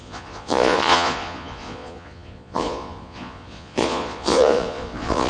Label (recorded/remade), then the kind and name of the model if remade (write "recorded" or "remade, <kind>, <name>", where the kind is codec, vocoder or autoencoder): remade, vocoder, Vocos